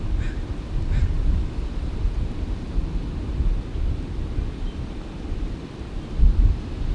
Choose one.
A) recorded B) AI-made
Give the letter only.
A